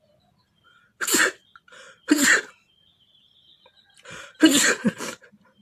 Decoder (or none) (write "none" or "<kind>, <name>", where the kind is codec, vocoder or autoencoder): none